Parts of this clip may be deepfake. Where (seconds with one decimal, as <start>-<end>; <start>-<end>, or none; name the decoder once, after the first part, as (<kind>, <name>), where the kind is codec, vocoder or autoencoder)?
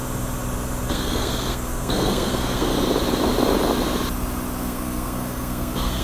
0.9-2.7 (codec, SNAC); 4.6-6.0